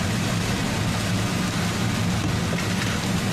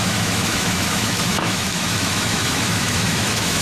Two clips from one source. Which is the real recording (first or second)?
first